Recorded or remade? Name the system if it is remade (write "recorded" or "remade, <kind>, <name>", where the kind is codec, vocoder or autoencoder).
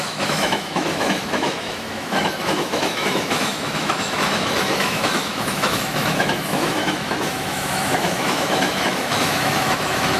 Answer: remade, autoencoder, DAC-VAE